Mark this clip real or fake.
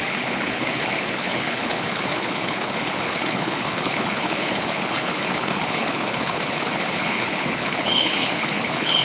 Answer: fake